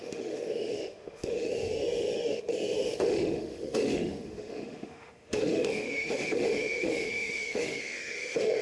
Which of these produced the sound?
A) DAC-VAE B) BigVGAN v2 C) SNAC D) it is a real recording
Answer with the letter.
A